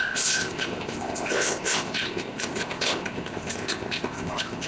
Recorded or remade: remade